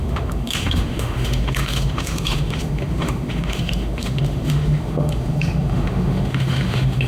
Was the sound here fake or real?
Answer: fake